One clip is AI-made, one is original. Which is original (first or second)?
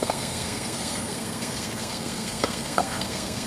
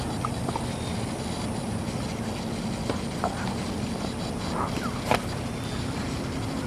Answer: second